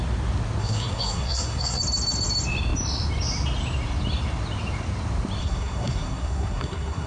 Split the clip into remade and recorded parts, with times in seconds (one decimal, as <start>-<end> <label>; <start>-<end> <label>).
0.0-0.6 recorded; 0.6-1.8 remade; 1.8-5.4 recorded; 5.4-7.1 remade